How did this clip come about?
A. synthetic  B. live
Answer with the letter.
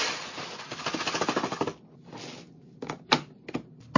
B